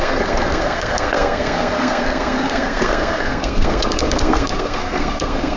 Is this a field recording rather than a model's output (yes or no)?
no